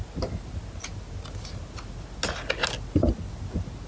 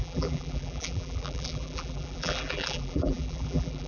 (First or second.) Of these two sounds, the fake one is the second